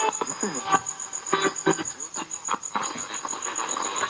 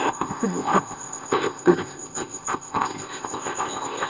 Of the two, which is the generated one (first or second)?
second